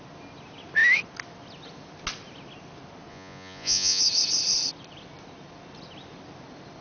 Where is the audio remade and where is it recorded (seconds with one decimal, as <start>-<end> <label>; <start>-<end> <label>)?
0.0-3.1 recorded; 3.1-4.0 remade; 4.0-6.8 recorded